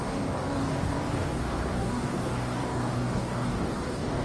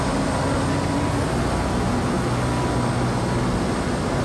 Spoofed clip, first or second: first